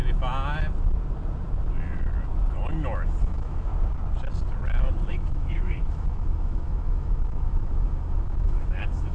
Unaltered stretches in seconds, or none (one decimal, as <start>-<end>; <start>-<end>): 0.0-3.2; 3.7-5.1